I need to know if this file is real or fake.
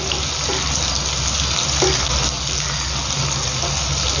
real